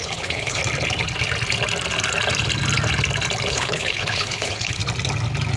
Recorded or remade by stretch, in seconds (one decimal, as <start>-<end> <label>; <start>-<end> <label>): 0.0-0.6 remade; 0.6-3.5 recorded; 3.5-4.8 remade; 4.8-5.6 recorded